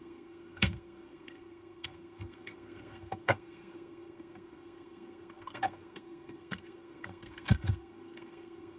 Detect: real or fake fake